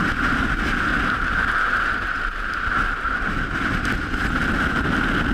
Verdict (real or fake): real